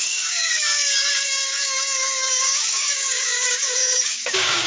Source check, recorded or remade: remade